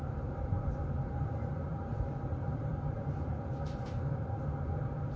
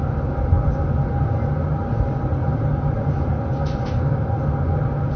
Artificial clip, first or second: first